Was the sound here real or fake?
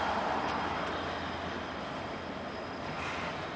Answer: real